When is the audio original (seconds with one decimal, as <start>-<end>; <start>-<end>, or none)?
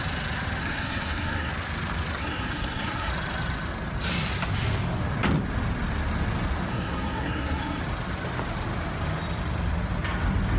0.0-0.6; 1.5-2.2; 3.1-6.7; 7.8-10.6